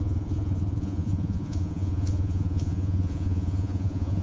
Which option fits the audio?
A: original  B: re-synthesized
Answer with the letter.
B